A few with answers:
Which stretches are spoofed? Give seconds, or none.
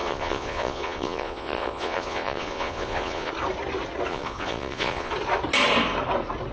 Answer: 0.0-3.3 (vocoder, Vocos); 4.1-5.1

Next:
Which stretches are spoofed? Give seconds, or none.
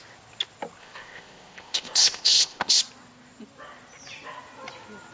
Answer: 0.8-2.8 (codec, ZipCodec)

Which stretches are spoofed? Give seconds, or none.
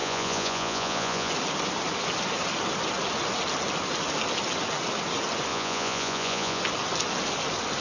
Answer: 0.0-1.3 (vocoder, Vocos); 5.5-6.6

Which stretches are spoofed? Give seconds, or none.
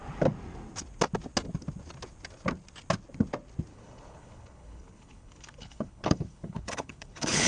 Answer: 3.7-7.5 (codec, HILCodec)